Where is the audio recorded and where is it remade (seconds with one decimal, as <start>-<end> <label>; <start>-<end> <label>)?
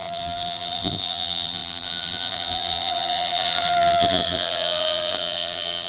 0.0-5.9 remade